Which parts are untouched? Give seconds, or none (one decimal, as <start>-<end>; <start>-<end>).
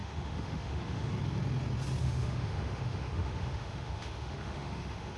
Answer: 1.1-2.0